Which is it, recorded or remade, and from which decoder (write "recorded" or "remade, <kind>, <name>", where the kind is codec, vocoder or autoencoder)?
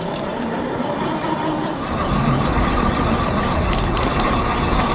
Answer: remade, vocoder, BigVGAN v2